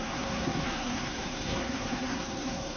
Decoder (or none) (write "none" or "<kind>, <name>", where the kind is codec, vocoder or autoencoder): codec, SNAC